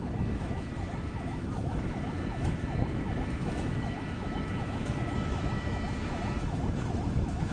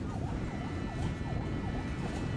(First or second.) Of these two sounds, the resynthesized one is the first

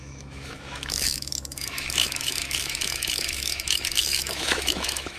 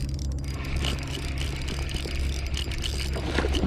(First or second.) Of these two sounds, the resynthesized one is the first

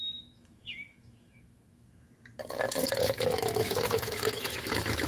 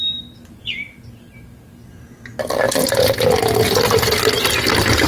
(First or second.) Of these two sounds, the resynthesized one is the first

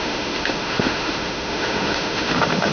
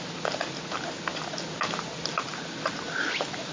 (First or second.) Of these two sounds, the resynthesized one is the first